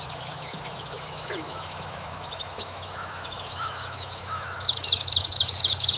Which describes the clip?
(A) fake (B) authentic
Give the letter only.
A